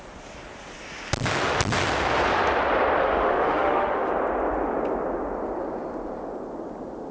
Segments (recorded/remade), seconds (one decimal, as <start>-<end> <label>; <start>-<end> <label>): 0.0-3.0 recorded; 3.0-4.1 remade; 4.1-7.1 recorded